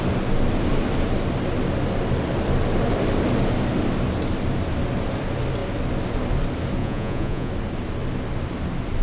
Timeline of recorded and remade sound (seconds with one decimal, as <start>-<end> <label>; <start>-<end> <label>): 0.0-6.8 recorded; 6.8-7.5 remade; 7.5-9.0 recorded